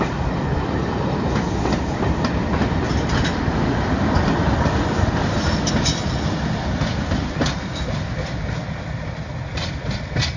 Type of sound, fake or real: real